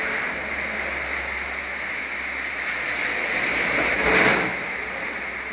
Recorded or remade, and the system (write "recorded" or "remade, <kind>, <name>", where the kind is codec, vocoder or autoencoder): recorded